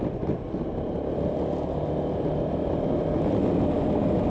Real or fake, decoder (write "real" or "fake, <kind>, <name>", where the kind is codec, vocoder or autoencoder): real